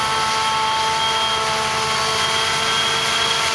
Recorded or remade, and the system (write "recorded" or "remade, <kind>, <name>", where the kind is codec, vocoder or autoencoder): recorded